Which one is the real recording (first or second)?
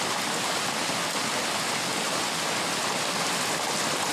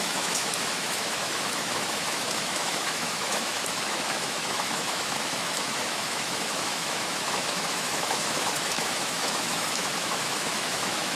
first